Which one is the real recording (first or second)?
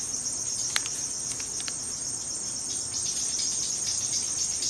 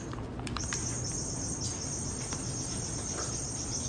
first